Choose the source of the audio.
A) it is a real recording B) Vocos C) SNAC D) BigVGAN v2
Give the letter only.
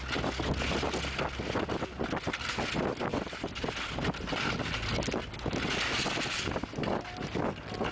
A